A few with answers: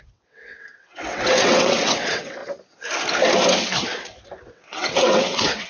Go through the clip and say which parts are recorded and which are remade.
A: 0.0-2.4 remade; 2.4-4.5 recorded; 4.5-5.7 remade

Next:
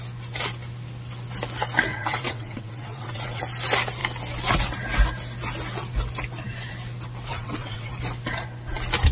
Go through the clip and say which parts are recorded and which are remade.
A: 0.0-1.9 recorded; 1.9-3.4 remade; 3.4-7.3 recorded; 7.3-7.9 remade; 7.9-9.1 recorded

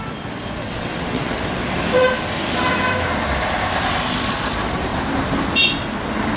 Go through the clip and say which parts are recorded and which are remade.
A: 0.0-0.6 recorded; 0.6-1.6 remade; 1.6-6.4 recorded

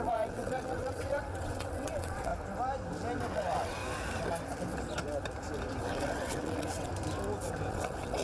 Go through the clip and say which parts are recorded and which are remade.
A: 0.0-2.3 remade; 2.3-3.3 recorded; 3.3-3.8 remade; 3.8-5.8 recorded; 5.8-6.9 remade; 6.9-7.7 recorded; 7.7-8.2 remade

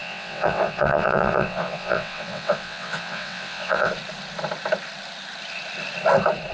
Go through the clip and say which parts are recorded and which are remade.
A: 0.0-3.9 remade; 3.9-6.5 recorded

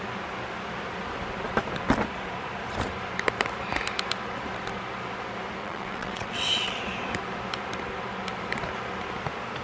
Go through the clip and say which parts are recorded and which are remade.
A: 0.0-5.6 recorded; 5.6-6.8 remade; 6.8-9.6 recorded

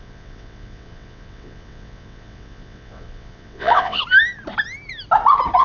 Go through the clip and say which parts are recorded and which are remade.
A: 0.0-4.0 remade; 4.0-5.6 recorded